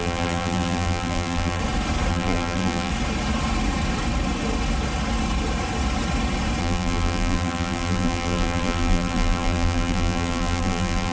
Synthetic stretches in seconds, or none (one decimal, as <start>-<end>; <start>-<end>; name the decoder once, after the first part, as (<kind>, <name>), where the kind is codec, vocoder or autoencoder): 0.0-1.6 (vocoder, BigVGAN v2); 2.1-2.9; 6.6-11.1